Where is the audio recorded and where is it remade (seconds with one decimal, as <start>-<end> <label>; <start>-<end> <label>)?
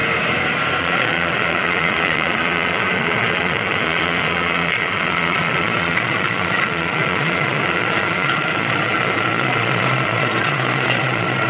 0.0-0.8 recorded; 0.8-11.5 remade